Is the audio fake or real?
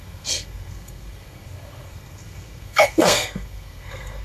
fake